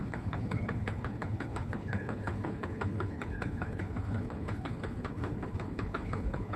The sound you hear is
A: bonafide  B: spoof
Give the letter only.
B